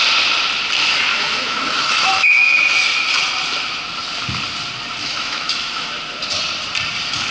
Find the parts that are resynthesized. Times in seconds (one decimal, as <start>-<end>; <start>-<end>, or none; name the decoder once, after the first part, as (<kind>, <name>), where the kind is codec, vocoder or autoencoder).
1.1-2.6 (autoencoder, DAC-VAE); 5.0-5.9